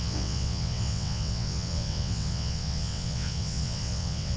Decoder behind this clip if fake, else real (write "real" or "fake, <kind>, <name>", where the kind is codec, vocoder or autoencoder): fake, vocoder, WaveNeXt